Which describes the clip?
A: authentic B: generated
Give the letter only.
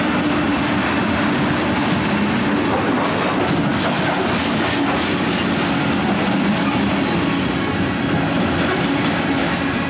A